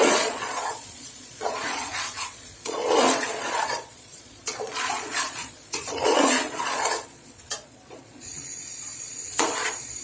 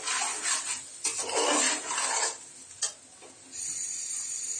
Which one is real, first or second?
second